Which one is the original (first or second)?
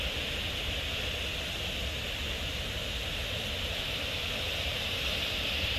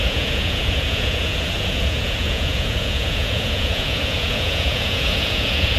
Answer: first